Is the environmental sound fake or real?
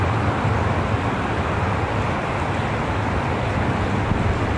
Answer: real